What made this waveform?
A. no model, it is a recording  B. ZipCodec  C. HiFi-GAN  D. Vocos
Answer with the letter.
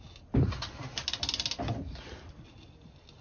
A